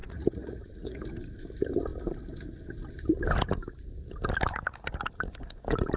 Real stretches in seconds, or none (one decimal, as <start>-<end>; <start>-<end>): 1.1-6.0